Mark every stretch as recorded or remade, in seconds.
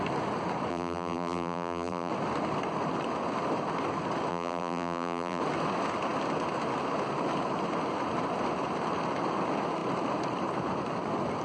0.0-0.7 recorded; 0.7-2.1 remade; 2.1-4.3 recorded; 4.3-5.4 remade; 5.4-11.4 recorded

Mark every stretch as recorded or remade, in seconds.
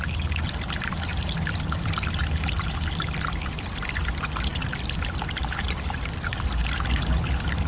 0.0-1.1 recorded; 1.1-2.2 remade; 2.2-6.6 recorded; 6.6-7.7 remade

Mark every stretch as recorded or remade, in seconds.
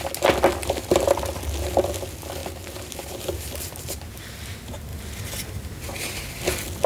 0.0-0.6 recorded; 0.6-1.2 remade; 1.2-2.4 recorded; 2.4-4.2 remade; 4.2-6.9 recorded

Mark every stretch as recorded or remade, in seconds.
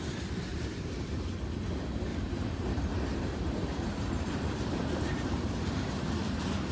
0.0-0.5 recorded; 0.5-1.1 remade; 1.1-2.1 recorded; 2.1-6.1 remade; 6.1-6.7 recorded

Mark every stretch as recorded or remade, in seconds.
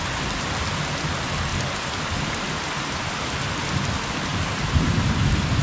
0.0-1.5 recorded; 1.5-3.2 remade; 3.2-4.3 recorded; 4.3-5.6 remade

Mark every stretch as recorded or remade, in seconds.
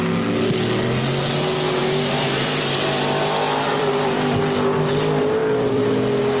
0.0-1.8 recorded; 1.8-2.6 remade; 2.6-3.7 recorded; 3.7-4.4 remade; 4.4-5.4 recorded; 5.4-5.9 remade; 5.9-6.4 recorded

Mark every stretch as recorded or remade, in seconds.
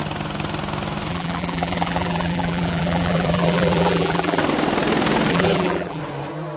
0.0-1.1 recorded; 1.1-4.4 remade; 4.4-5.3 recorded; 5.3-6.0 remade; 6.0-6.6 recorded